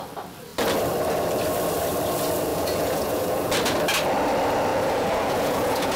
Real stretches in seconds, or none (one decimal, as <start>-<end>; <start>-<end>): 0.0-2.5; 3.5-4.7